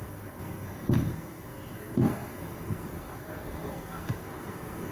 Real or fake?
fake